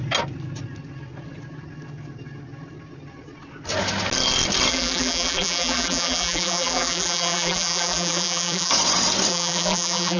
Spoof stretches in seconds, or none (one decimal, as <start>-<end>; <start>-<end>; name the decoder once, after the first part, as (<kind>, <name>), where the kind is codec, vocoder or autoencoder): 4.7-8.7 (vocoder, BigVGAN v2); 9.3-10.2

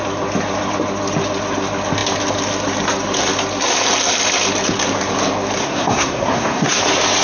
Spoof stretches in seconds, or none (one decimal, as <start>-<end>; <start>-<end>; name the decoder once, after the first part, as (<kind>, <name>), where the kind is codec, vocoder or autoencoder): 5.6-6.8 (codec, SNAC)

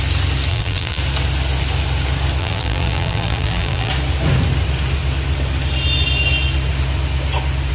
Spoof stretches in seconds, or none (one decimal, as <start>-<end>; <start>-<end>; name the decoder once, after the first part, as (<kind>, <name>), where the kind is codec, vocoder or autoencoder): 0.5-1.0 (vocoder, BigVGAN v2); 2.4-3.9